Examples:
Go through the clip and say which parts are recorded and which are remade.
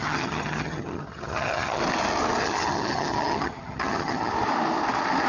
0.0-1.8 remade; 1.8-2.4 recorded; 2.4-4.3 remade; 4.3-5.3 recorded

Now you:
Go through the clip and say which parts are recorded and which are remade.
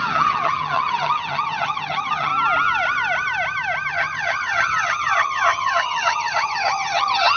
0.0-2.3 remade; 2.3-3.9 recorded; 3.9-7.4 remade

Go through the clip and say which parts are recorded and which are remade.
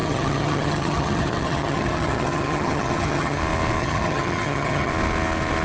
0.0-3.4 remade; 3.4-3.8 recorded; 3.8-4.9 remade; 4.9-5.6 recorded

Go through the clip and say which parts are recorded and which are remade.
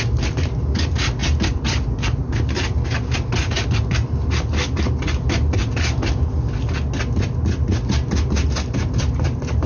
0.0-9.7 recorded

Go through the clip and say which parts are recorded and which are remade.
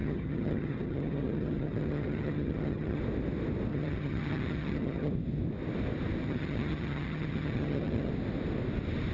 0.0-3.0 remade; 3.0-3.7 recorded; 3.7-5.1 remade; 5.1-6.2 recorded; 6.2-8.1 remade; 8.1-9.1 recorded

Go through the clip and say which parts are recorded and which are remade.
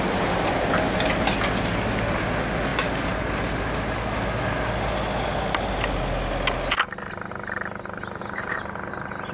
0.0-9.3 recorded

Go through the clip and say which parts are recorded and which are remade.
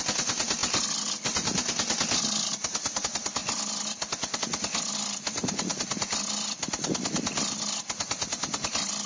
0.0-9.1 recorded